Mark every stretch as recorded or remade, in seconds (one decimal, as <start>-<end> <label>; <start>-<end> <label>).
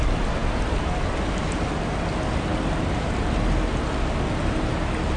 0.0-5.2 recorded